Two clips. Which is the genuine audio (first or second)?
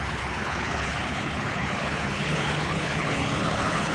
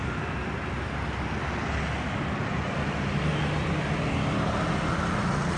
second